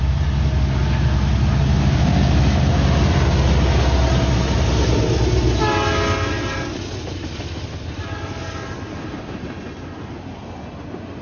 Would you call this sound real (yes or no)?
yes